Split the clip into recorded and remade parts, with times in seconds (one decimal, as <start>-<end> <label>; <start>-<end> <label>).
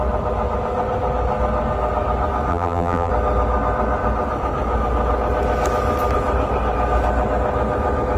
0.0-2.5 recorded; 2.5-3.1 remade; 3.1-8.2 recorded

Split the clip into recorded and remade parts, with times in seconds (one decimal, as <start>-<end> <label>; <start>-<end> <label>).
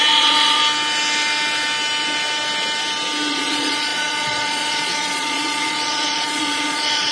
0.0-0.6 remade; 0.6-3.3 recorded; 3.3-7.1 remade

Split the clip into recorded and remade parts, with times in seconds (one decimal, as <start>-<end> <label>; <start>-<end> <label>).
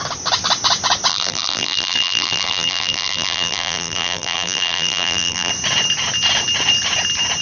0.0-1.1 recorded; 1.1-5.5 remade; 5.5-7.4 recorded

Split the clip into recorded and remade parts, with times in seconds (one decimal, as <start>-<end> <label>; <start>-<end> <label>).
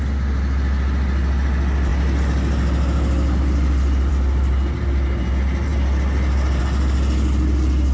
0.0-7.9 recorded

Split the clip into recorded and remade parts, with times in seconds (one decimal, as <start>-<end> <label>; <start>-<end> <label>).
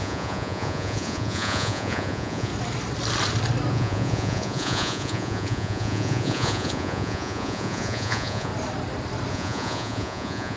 0.0-2.5 remade; 2.5-3.7 recorded; 3.7-8.5 remade; 8.5-9.3 recorded; 9.3-10.6 remade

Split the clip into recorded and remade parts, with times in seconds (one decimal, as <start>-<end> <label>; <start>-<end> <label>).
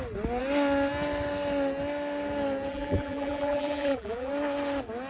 0.0-2.7 recorded; 2.7-4.3 remade; 4.3-5.1 recorded